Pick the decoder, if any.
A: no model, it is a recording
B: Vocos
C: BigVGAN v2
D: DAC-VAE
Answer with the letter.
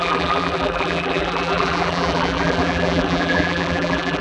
C